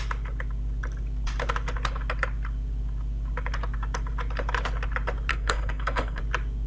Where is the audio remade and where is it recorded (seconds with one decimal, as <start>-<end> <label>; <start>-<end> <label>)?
0.0-5.3 recorded; 5.3-6.2 remade; 6.2-6.7 recorded